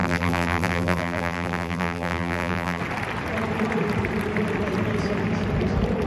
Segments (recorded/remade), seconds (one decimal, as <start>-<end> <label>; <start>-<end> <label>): 0.0-2.8 remade; 2.8-6.1 recorded